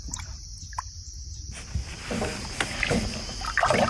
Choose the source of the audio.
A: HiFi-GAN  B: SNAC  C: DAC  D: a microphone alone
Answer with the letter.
D